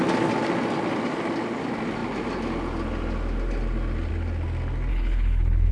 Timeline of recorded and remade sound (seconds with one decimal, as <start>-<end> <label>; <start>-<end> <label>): 0.0-4.9 recorded; 4.9-5.7 remade